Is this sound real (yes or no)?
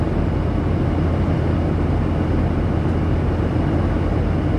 yes